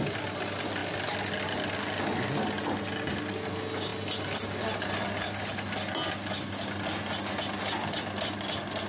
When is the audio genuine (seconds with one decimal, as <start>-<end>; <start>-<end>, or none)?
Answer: 0.0-8.9